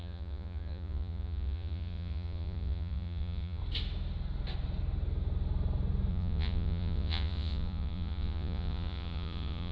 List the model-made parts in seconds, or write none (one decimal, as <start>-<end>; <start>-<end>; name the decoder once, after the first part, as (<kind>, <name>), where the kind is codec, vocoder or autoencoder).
0.0-3.6 (vocoder, Vocos); 6.1-9.7